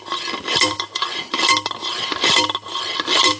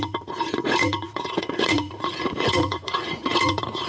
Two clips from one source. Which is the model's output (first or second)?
second